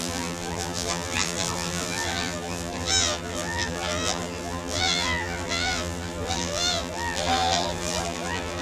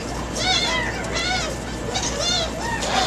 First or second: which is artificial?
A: first